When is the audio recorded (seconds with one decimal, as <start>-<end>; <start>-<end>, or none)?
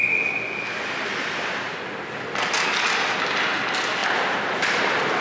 0.0-4.0